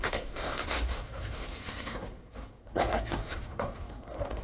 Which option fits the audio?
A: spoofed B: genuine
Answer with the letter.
A